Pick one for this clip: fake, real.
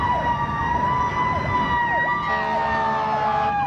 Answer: real